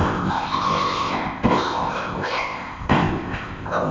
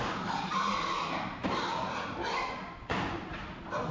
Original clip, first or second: second